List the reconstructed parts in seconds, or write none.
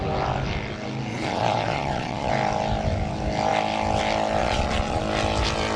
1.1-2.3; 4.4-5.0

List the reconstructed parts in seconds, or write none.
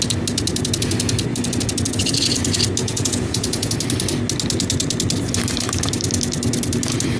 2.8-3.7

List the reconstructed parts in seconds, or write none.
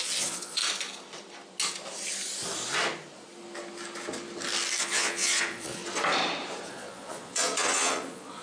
0.0-0.6; 4.8-5.8; 6.7-8.4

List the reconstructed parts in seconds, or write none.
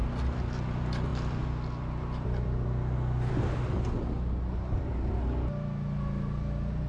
none